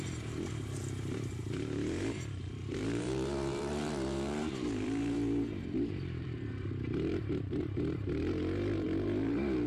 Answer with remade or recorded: remade